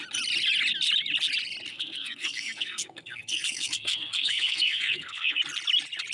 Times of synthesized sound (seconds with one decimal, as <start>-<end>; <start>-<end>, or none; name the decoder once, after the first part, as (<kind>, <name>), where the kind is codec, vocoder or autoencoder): 1.7-5.4 (codec, SNAC)